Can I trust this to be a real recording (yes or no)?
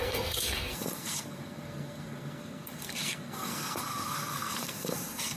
no